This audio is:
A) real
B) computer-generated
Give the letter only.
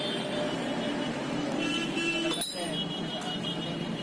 A